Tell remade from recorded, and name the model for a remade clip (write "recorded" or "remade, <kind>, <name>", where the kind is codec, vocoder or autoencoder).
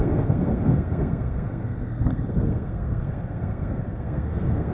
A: remade, codec, SNAC